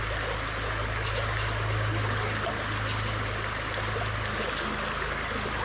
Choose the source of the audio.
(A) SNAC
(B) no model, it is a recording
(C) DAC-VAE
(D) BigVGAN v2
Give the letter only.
B